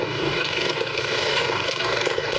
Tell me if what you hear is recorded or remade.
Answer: remade